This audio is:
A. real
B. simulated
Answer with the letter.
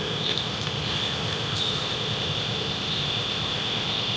B